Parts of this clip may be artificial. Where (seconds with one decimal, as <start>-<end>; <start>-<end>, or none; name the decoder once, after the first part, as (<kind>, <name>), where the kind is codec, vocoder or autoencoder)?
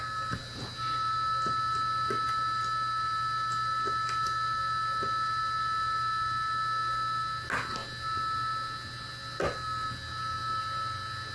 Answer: none